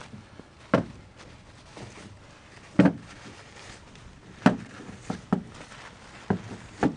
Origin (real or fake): real